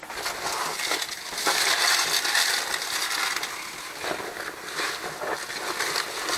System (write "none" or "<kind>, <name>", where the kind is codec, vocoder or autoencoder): none